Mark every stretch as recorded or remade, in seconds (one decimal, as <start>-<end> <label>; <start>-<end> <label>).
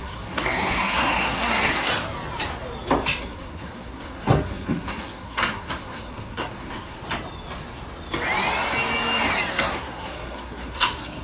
0.0-1.9 remade; 1.9-3.2 recorded; 3.2-7.0 remade; 7.0-9.5 recorded; 9.5-11.2 remade